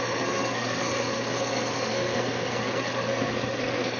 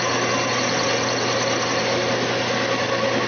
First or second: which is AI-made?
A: first